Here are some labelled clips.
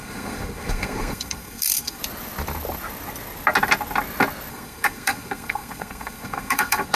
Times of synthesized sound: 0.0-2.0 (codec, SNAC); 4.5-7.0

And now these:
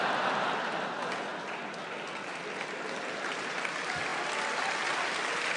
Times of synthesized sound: none

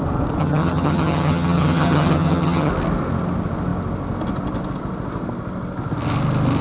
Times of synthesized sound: 0.4-2.7 (vocoder, HiFi-GAN)

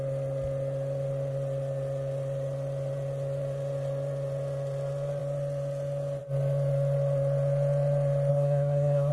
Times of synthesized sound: 8.3-9.1 (codec, SNAC)

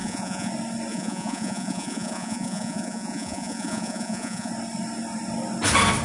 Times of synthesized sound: 0.0-0.5 (vocoder, Vocos); 0.9-4.5

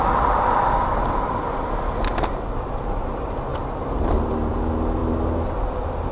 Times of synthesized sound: none

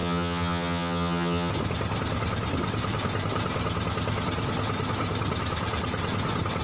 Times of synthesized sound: 0.0-1.5 (vocoder, HiFi-GAN)